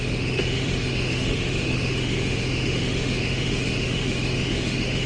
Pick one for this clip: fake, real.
fake